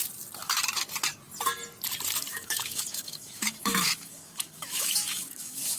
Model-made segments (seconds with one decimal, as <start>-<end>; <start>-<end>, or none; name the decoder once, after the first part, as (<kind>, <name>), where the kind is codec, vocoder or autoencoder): 2.3-5.8 (autoencoder, DAC-VAE)